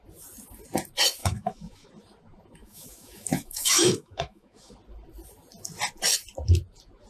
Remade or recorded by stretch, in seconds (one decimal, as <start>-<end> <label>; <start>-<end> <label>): 0.0-1.2 recorded; 1.2-1.9 remade; 1.9-2.6 recorded; 2.6-4.7 remade; 4.7-7.1 recorded